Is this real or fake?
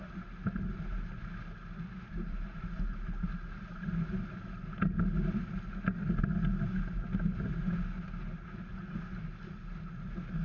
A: real